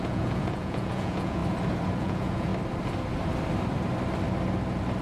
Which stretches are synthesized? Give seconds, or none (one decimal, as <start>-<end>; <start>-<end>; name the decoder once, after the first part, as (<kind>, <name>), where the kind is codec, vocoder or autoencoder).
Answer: 0.0-1.4 (vocoder, Vocos); 2.0-2.5